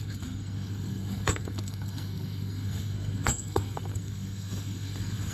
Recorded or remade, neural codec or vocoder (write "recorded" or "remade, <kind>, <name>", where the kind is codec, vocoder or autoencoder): remade, codec, SNAC